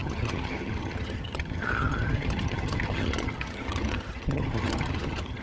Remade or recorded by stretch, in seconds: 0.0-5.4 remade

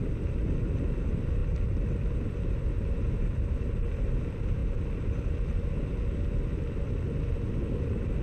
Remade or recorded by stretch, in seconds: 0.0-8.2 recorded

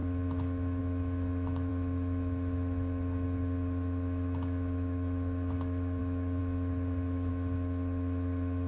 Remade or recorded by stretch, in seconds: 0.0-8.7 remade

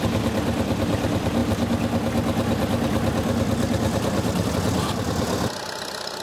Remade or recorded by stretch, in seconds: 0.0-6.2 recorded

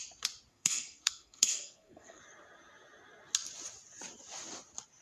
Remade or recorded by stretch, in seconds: 0.0-0.5 recorded; 0.5-2.2 remade; 2.2-5.0 recorded

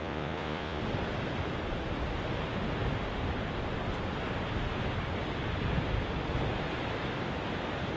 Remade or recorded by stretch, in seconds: 0.0-0.8 remade; 0.8-8.0 recorded

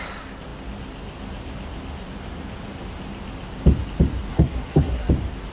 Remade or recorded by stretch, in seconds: 0.0-4.3 recorded; 4.3-5.1 remade; 5.1-5.5 recorded

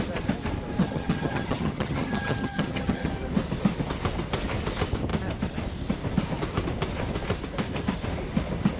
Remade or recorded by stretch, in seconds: 0.0-0.8 recorded; 0.8-3.1 remade; 3.1-8.8 recorded